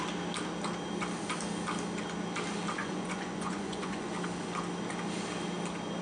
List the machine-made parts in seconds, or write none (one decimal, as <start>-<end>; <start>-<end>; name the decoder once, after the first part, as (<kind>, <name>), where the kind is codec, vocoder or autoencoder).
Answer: 2.8-4.1 (vocoder, Vocos)